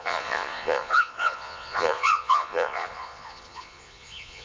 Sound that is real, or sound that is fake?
fake